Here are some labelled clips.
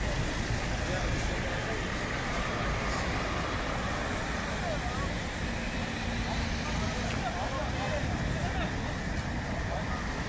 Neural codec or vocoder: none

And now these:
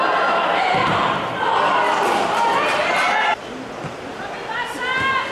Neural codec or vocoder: none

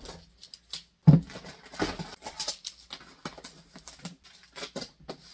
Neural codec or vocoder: none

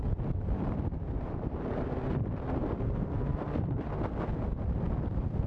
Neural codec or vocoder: none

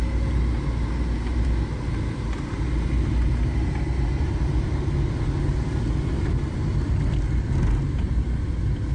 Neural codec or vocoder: none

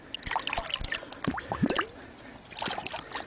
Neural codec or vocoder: none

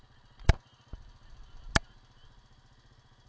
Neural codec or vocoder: none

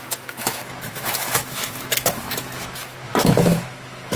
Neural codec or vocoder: autoencoder, DAC-VAE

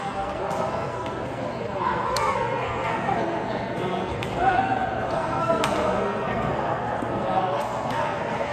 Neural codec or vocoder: codec, SNAC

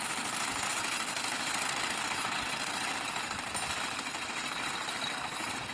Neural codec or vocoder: none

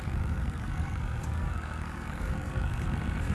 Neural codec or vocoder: codec, SNAC